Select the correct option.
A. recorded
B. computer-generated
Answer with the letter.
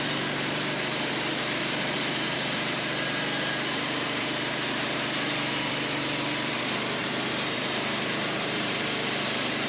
B